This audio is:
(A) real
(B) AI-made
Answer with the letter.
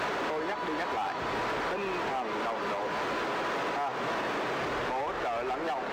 A